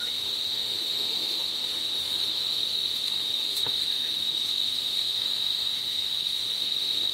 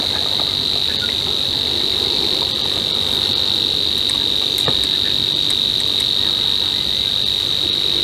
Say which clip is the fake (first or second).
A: first